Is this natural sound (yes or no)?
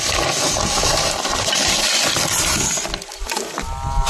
yes